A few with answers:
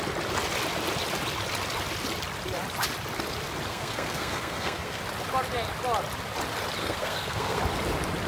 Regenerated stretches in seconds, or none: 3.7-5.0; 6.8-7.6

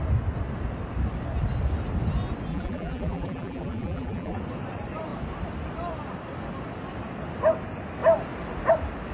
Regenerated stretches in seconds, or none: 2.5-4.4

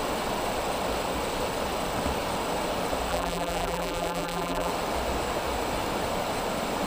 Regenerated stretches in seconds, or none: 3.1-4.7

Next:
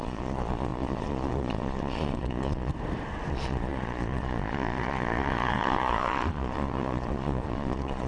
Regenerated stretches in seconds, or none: 0.0-2.7; 3.3-8.1

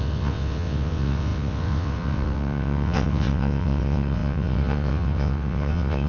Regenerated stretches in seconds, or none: 0.0-6.1

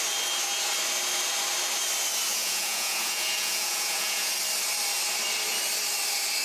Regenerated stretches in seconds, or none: 2.3-4.3